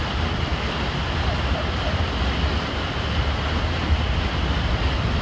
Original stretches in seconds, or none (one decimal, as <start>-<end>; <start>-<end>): 0.0-5.2